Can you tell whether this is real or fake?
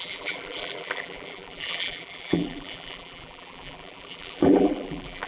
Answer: fake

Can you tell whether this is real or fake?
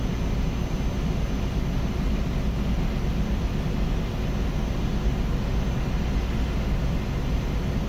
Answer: real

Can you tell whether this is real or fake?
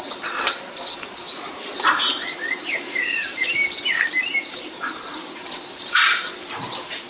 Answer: fake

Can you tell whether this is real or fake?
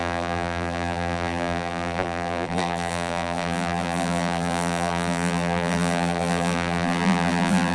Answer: fake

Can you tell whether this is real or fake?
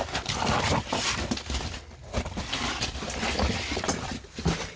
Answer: fake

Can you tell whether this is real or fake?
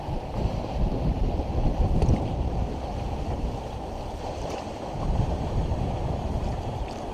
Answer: fake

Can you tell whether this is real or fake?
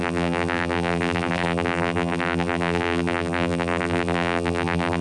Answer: fake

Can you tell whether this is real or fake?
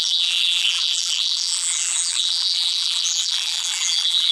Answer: fake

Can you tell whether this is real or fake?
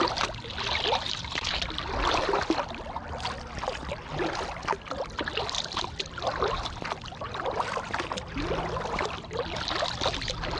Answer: real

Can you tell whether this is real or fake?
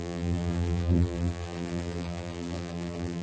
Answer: fake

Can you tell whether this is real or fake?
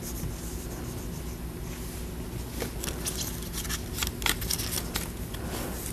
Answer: real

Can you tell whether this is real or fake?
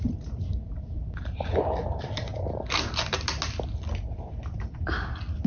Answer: real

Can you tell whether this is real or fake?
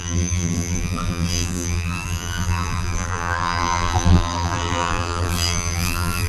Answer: fake